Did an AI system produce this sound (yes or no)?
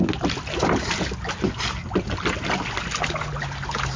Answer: no